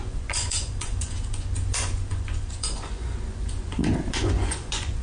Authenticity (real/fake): fake